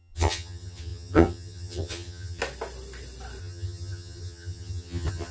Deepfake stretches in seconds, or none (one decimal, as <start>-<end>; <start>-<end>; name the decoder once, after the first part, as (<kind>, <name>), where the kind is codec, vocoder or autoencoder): 0.0-2.4 (vocoder, HiFi-GAN); 3.4-5.3

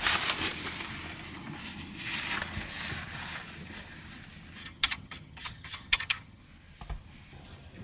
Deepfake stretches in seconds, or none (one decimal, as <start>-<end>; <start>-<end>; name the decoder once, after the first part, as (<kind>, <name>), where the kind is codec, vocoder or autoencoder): 4.6-6.4 (vocoder, HiFi-GAN)